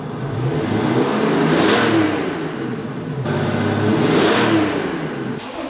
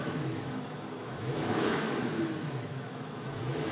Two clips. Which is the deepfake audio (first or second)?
second